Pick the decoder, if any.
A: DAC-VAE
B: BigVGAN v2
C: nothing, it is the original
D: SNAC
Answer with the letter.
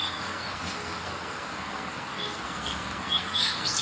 D